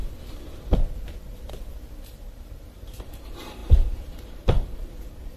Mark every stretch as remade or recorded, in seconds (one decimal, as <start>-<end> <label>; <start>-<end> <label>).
0.0-2.6 recorded; 2.6-5.4 remade